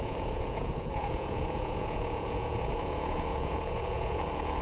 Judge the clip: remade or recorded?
remade